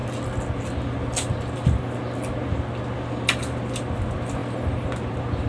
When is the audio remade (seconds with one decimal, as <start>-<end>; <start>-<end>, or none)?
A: none